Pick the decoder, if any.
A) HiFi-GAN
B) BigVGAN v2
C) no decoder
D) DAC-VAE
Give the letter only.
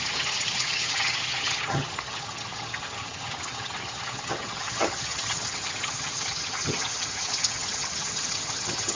A